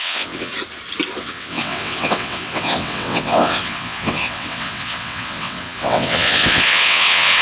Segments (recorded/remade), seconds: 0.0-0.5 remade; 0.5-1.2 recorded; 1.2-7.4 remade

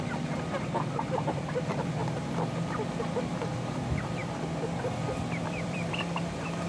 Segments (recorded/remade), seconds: 0.0-2.0 remade; 2.0-3.0 recorded; 3.0-4.2 remade; 4.2-4.8 recorded; 4.8-6.7 remade

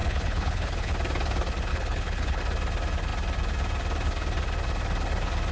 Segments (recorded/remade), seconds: 0.0-0.9 remade; 0.9-1.7 recorded; 1.7-2.4 remade; 2.4-5.5 recorded

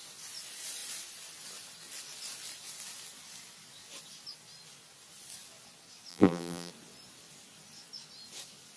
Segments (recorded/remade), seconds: 0.0-6.1 recorded; 6.1-6.7 remade; 6.7-8.8 recorded